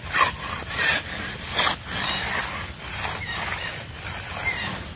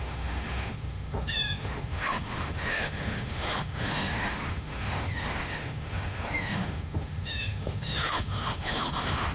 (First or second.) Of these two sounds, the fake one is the second